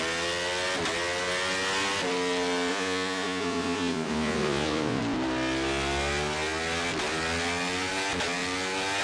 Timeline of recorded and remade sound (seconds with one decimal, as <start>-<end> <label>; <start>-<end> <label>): 0.0-2.7 recorded; 2.7-5.0 remade; 5.0-9.0 recorded